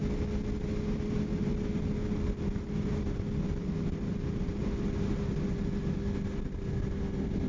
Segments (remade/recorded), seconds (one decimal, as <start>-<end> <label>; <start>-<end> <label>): 0.0-7.5 recorded